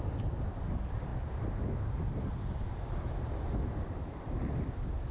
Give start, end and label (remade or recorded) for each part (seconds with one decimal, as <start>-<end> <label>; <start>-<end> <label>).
0.0-5.1 recorded